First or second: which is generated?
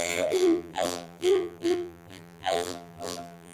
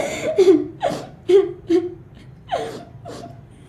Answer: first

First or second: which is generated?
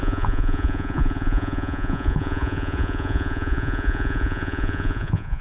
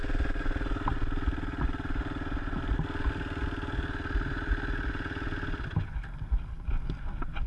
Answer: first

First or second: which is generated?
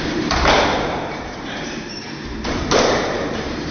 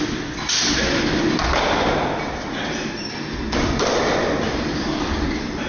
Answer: first